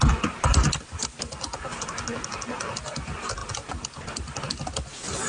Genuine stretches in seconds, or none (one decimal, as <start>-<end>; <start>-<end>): 0.0-5.3